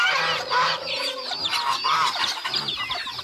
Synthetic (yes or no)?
no